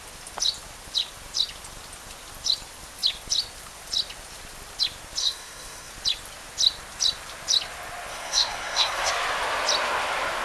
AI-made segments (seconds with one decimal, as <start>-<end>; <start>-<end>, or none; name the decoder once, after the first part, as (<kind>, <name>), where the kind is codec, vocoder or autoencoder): 5.2-5.9 (codec, SNAC); 8.1-9.1